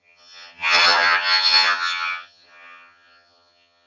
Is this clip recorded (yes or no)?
no